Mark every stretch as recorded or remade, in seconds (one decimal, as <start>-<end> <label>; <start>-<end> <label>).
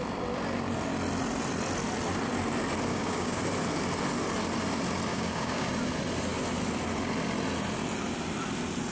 0.0-2.9 recorded; 2.9-3.4 remade; 3.4-5.1 recorded; 5.1-5.7 remade; 5.7-8.9 recorded